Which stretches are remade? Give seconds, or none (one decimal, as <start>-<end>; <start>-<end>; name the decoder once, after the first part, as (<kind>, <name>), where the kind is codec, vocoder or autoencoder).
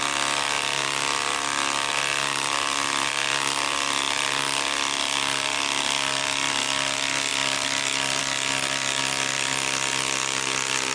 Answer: none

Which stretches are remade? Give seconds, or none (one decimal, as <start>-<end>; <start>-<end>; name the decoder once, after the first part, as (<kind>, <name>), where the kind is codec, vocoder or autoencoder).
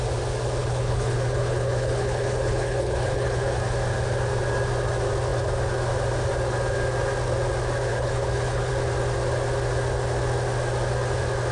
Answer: 0.6-3.6 (codec, HILCodec); 7.9-8.7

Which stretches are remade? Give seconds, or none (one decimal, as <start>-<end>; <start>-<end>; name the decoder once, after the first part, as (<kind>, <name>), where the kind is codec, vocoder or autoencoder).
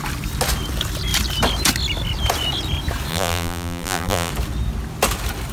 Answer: 3.1-4.3 (vocoder, BigVGAN v2)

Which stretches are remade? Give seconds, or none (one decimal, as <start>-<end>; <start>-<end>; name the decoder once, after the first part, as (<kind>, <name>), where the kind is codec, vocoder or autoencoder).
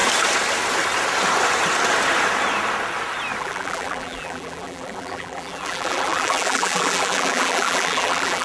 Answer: 3.4-8.4 (vocoder, BigVGAN v2)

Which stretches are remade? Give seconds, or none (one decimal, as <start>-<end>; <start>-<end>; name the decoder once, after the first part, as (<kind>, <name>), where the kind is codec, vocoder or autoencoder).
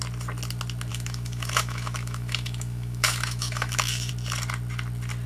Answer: 0.9-4.1 (autoencoder, DAC-VAE)